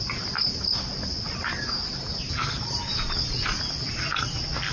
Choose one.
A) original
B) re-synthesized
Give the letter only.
A